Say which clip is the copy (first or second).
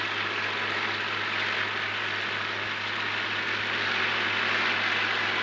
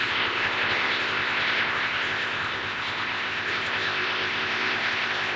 second